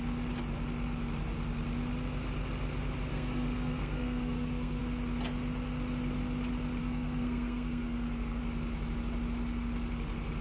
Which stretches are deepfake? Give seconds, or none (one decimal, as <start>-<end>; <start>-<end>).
3.1-4.8; 6.8-8.4